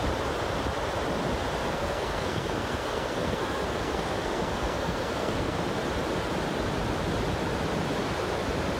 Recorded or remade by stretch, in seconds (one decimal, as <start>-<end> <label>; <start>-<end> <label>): 0.0-1.6 recorded; 1.6-5.6 remade; 5.6-8.8 recorded